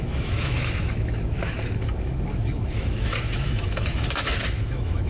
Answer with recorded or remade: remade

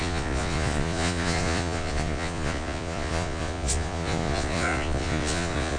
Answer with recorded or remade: remade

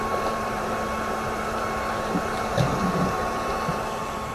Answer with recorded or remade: remade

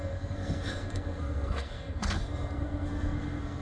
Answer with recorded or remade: remade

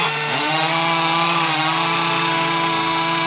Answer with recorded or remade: remade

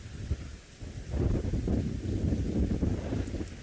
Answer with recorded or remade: recorded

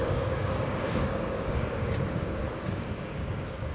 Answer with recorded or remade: remade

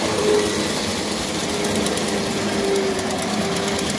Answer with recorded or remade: recorded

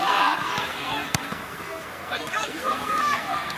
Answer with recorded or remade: remade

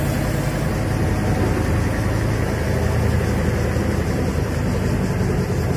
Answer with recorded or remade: recorded